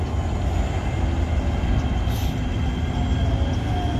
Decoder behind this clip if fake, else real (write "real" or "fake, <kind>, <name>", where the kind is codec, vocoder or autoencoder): real